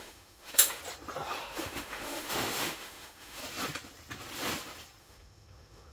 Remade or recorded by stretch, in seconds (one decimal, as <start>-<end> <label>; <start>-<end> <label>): 0.0-0.8 remade; 0.8-1.4 recorded; 1.4-3.4 remade; 3.4-5.0 recorded; 5.0-5.9 remade